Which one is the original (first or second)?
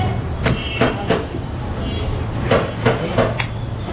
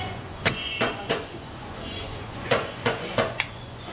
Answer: first